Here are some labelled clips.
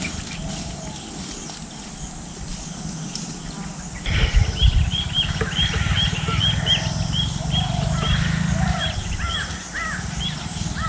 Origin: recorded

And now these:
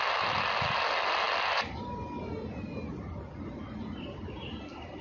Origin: recorded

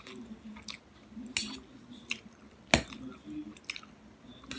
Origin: recorded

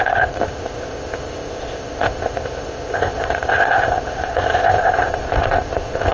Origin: remade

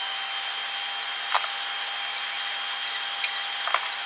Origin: recorded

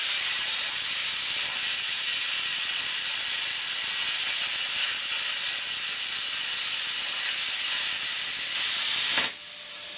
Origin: recorded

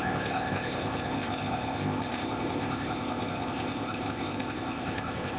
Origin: remade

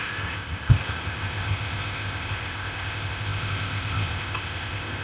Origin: remade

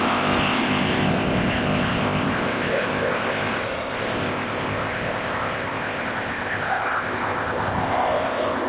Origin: remade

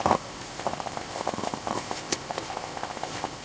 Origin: remade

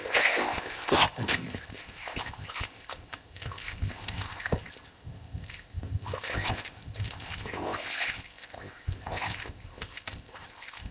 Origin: remade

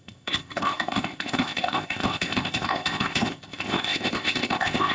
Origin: remade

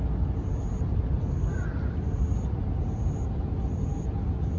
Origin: recorded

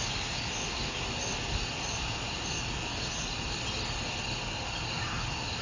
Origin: recorded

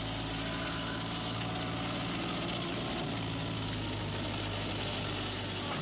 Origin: recorded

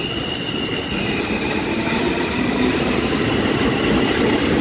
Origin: recorded